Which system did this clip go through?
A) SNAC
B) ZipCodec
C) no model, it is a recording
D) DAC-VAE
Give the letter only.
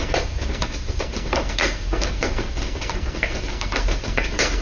A